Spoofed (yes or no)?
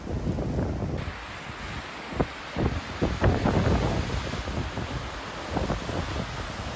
no